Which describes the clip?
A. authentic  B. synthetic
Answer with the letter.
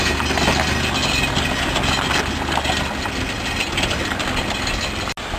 A